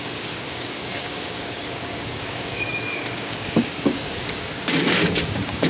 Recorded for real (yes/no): no